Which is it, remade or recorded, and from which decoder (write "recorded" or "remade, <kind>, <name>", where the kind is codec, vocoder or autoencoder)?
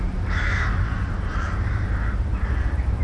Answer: remade, vocoder, BigVGAN v2